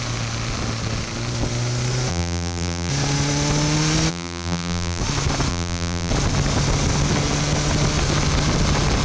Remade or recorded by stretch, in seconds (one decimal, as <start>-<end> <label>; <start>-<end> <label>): 0.0-2.1 recorded; 2.1-2.9 remade; 2.9-4.1 recorded; 4.1-5.0 remade; 5.0-5.5 recorded; 5.5-6.1 remade; 6.1-9.0 recorded